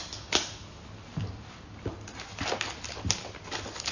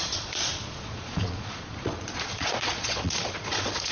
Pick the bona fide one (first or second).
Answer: first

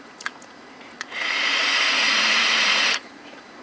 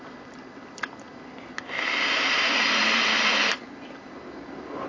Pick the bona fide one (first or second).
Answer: second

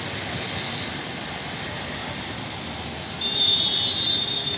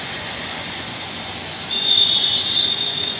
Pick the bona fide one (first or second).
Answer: first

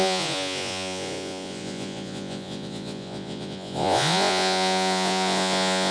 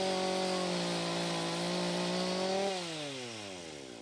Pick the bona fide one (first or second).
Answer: second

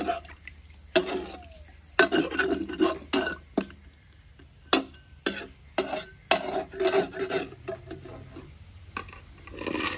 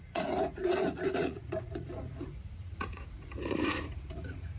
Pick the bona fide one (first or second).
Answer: first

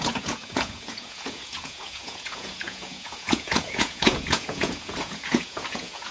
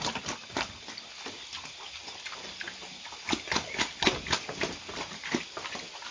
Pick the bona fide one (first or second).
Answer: second